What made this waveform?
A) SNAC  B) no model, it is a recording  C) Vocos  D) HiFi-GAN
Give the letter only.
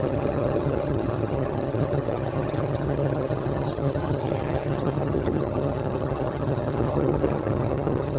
D